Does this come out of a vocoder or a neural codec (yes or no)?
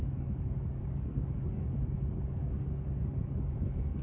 yes